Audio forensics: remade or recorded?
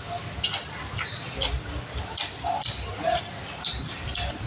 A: recorded